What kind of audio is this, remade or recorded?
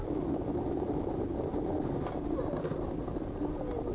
recorded